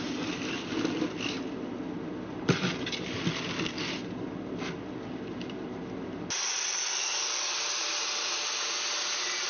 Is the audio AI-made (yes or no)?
no